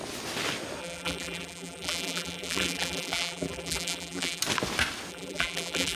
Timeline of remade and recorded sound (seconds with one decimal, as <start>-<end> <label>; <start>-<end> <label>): 0.0-0.8 recorded; 0.8-4.4 remade; 4.4-5.1 recorded; 5.1-6.0 remade